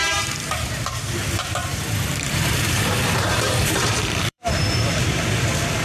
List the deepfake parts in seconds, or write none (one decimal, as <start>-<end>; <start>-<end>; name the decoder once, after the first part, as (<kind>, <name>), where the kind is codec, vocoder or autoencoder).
1.6-5.1 (vocoder, BigVGAN v2)